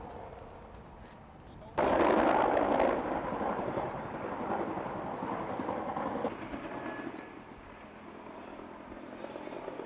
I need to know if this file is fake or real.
real